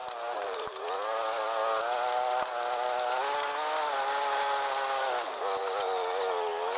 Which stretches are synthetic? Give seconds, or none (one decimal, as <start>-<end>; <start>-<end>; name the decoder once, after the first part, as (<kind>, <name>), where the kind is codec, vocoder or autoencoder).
0.0-0.8 (vocoder, BigVGAN v2)